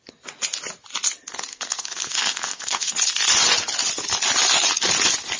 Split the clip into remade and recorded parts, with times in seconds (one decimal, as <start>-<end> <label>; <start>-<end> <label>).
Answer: 0.0-1.5 recorded; 1.5-2.9 remade; 2.9-5.4 recorded